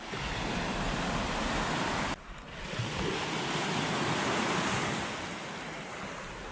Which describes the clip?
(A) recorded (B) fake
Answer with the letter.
A